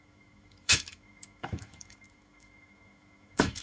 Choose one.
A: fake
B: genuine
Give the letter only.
A